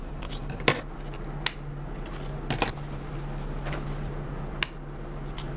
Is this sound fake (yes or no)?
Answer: no